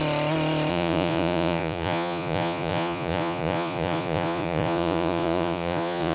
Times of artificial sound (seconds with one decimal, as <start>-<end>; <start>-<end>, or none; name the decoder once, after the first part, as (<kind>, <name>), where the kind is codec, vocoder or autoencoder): 0.7-6.1 (vocoder, Vocos)